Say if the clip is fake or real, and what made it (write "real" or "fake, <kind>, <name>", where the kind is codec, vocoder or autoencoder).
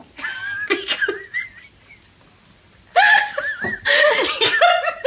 real